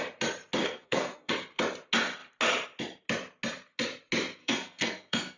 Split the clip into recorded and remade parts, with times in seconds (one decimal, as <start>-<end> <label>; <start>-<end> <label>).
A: 0.0-0.6 recorded; 0.6-1.3 remade; 1.3-4.4 recorded; 4.4-5.4 remade